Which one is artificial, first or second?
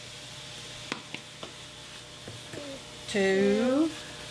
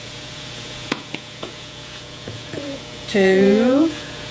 second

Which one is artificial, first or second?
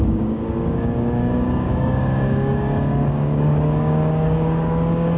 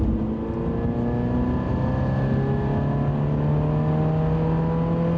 first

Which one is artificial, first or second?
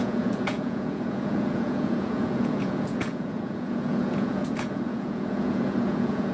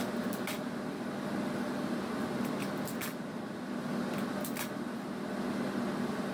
first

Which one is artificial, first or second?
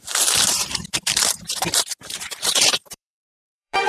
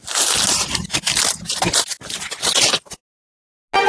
first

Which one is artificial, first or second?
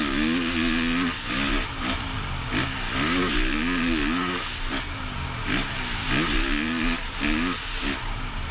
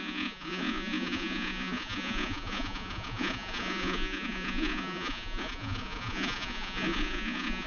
second